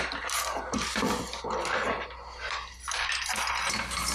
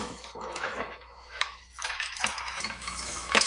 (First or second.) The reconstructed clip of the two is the second